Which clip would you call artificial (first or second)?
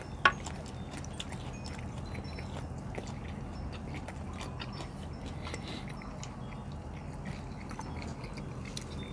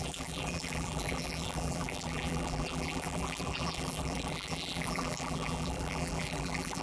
second